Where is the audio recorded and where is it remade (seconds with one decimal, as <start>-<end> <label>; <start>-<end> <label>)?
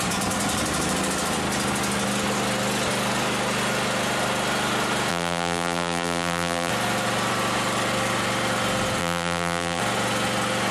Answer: 0.0-5.1 recorded; 5.1-6.7 remade; 6.7-9.0 recorded; 9.0-9.8 remade; 9.8-10.7 recorded